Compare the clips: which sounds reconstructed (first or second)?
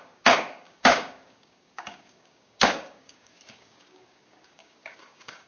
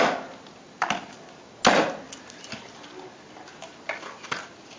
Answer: first